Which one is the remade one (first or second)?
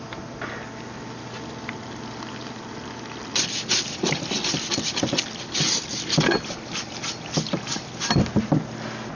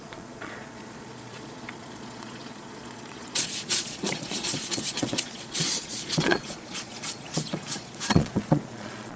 second